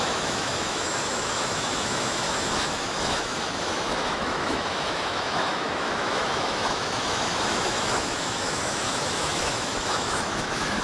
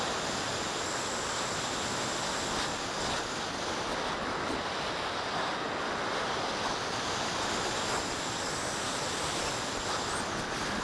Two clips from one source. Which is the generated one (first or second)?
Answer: first